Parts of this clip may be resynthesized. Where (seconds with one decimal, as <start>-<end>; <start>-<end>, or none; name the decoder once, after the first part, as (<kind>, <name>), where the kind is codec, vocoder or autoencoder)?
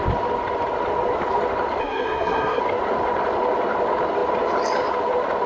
1.8-2.6 (codec, SNAC)